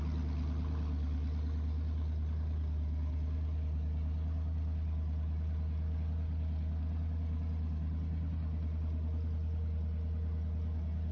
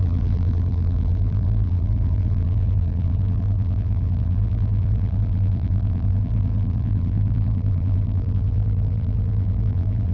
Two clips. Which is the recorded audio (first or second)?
first